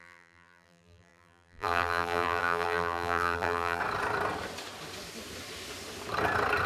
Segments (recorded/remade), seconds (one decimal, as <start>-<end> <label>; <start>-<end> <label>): 0.0-3.8 remade; 3.8-6.7 recorded